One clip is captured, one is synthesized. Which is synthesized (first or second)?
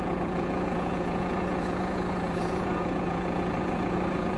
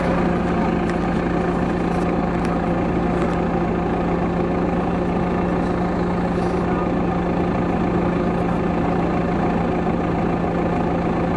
first